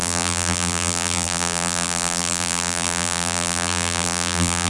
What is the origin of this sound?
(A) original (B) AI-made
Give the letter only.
B